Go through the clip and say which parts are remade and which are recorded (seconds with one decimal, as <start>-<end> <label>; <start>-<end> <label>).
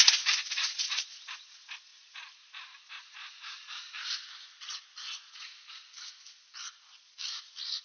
0.0-7.8 recorded